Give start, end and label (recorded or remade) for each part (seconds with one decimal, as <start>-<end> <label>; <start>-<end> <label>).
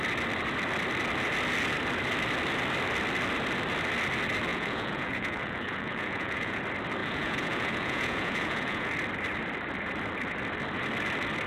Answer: 0.0-4.5 recorded; 4.5-6.6 remade; 6.6-7.0 recorded; 7.0-8.9 remade; 8.9-11.5 recorded